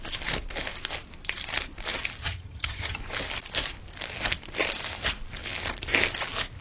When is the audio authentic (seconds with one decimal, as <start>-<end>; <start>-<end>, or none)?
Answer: 0.0-2.2; 3.0-6.6